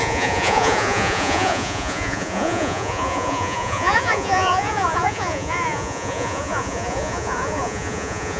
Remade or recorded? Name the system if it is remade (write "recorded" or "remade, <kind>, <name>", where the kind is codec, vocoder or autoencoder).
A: remade, vocoder, Vocos